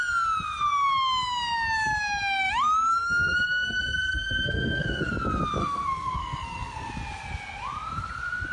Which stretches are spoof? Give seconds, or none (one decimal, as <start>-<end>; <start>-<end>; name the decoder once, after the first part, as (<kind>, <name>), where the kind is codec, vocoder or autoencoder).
2.9-5.1 (codec, SNAC); 5.6-6.9